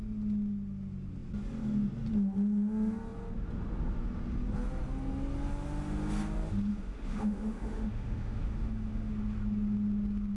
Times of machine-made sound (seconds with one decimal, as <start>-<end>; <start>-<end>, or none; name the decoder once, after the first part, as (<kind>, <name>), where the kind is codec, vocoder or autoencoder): 6.7-9.1 (autoencoder, DAC-VAE)